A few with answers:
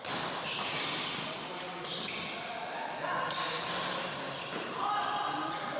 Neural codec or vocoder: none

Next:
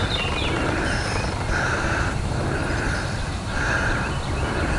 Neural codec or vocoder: none